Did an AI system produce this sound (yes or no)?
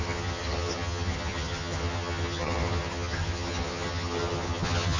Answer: yes